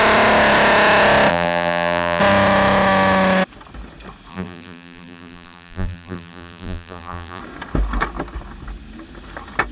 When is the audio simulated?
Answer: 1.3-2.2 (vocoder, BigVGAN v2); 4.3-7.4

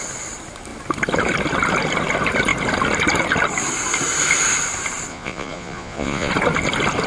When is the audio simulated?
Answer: 5.1-6.3 (vocoder, Vocos)

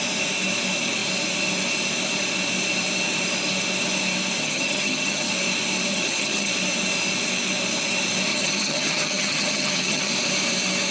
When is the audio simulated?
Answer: 4.4-5.3 (vocoder, HiFi-GAN); 5.9-6.5; 8.3-10.1

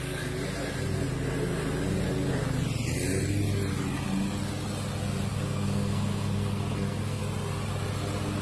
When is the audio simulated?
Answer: 5.3-7.2 (codec, SNAC)

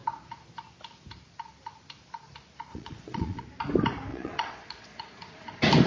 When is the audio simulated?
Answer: 2.7-3.4 (vocoder, Vocos); 4.1-5.2

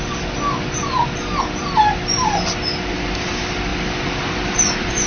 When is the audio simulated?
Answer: none